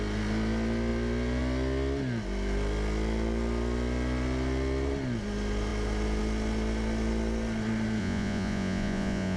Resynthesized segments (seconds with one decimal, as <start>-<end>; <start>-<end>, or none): 8.0-9.4